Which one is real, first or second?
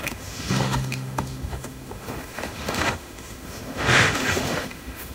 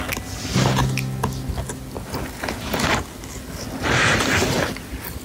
second